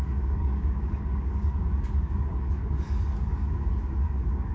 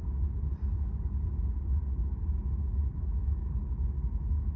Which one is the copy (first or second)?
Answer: first